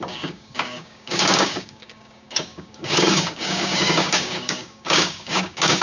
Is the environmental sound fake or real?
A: fake